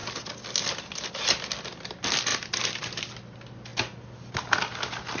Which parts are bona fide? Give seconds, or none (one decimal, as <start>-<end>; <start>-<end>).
0.0-2.3; 2.8-5.2